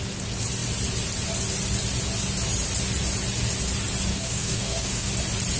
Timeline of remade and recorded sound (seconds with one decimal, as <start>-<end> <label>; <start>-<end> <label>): 0.0-4.1 recorded; 4.1-5.1 remade; 5.1-5.6 recorded